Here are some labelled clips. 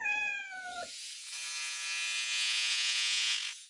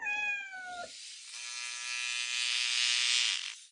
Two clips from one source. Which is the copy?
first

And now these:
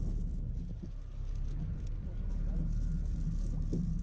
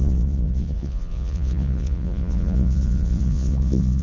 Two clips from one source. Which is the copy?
second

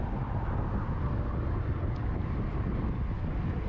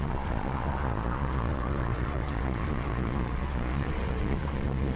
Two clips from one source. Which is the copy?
second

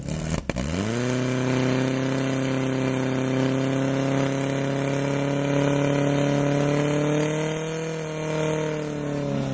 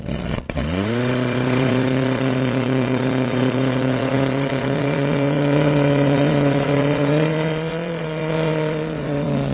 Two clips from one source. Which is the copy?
second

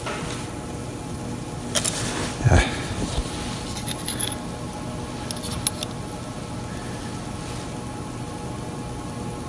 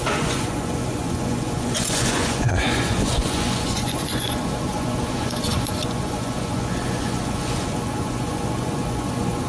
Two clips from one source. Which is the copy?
second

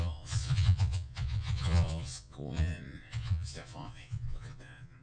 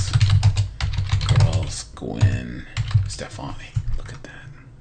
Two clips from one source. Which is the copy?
first